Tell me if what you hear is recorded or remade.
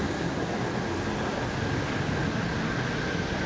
recorded